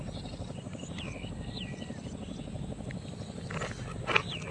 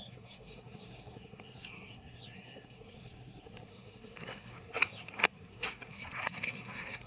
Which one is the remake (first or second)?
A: second